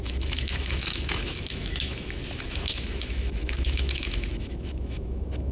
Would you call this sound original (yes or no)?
no